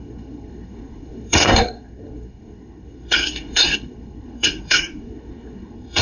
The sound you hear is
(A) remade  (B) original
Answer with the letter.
A